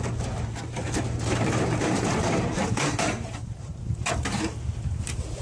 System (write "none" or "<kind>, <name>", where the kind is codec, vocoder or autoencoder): vocoder, BigVGAN v2